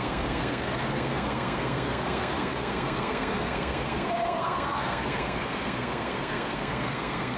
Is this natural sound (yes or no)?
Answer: no